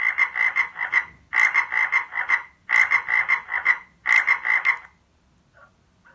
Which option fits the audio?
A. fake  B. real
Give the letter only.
B